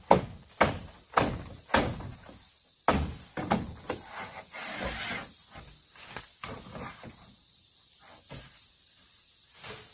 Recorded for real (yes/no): yes